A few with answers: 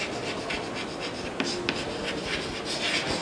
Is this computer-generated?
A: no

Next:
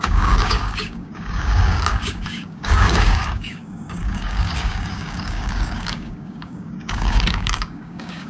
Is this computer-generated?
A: yes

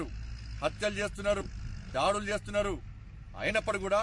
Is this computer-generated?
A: no